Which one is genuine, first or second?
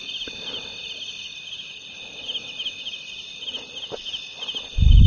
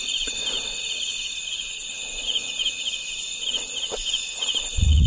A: first